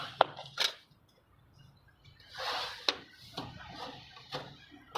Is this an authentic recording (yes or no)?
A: yes